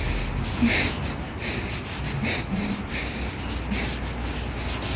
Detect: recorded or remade recorded